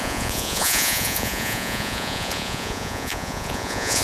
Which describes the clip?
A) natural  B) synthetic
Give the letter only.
B